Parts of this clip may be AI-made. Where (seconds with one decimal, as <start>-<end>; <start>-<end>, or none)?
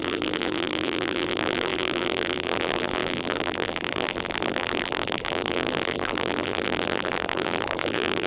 0.0-8.3